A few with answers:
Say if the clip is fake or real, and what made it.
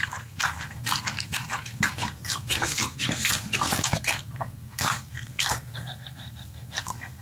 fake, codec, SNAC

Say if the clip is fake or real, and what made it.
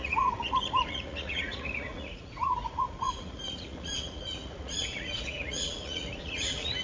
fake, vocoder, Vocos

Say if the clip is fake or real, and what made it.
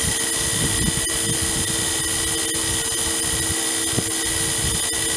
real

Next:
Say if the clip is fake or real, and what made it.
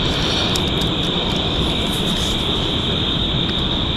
real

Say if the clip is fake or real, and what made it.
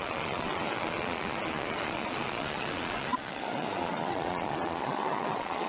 fake, vocoder, Vocos